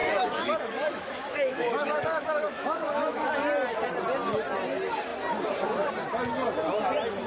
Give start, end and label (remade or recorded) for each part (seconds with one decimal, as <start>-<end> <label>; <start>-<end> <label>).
0.0-3.3 remade; 3.3-7.3 recorded